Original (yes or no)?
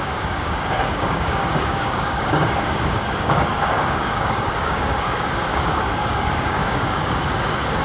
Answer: no